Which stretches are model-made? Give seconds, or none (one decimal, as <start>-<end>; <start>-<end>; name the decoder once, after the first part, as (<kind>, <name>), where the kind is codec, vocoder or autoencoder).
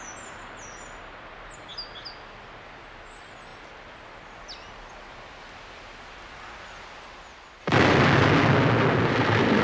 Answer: none